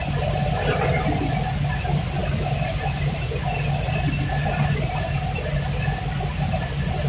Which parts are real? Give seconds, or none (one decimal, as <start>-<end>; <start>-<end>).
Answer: 0.0-7.1